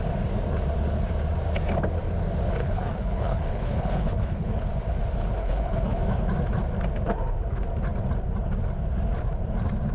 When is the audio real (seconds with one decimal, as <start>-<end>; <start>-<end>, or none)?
0.0-2.6; 4.6-5.4; 6.0-9.9